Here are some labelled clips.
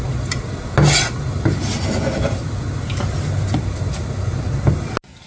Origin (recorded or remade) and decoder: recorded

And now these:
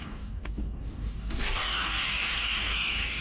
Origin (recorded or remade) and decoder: remade, codec, DAC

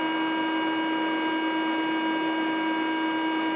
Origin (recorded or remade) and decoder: recorded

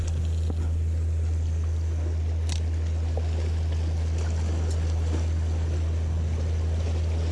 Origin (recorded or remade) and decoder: recorded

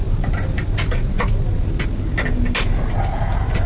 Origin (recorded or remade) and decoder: recorded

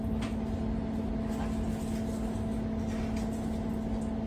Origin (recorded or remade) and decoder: recorded